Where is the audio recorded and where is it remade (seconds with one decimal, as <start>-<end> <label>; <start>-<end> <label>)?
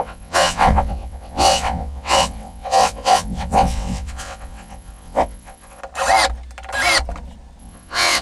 0.0-5.8 remade; 5.8-7.6 recorded; 7.6-8.2 remade